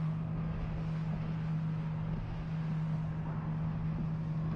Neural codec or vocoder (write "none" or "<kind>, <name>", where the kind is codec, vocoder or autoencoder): none